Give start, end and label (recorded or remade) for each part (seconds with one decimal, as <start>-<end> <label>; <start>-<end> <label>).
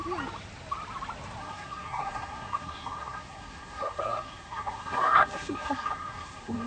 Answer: 0.0-1.4 recorded; 1.4-6.7 remade